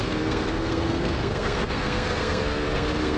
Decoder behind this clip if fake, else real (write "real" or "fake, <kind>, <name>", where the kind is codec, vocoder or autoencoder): fake, codec, SNAC